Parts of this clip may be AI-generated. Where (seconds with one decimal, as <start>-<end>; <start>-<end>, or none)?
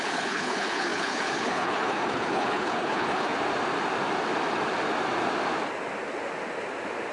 0.0-3.3